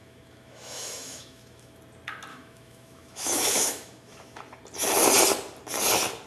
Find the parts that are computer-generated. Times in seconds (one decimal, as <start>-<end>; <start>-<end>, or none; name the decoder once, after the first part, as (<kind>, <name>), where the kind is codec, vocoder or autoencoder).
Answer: 0.0-1.8 (autoencoder, DAC-VAE); 2.3-4.4